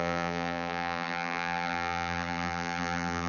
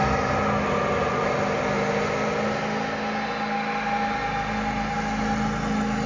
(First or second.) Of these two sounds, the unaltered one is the second